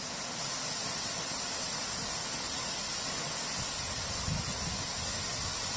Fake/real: real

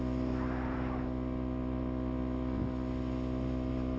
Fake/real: real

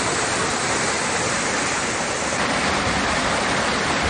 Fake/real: real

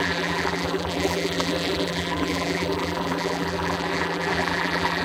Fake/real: fake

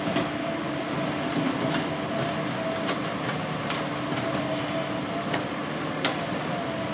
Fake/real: real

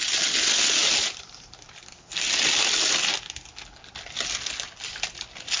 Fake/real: real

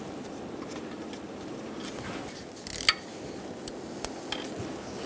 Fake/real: real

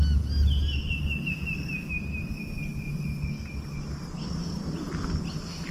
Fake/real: real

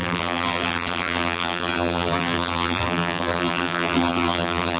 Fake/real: fake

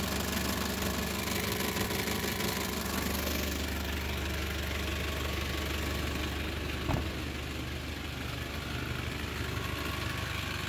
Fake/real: real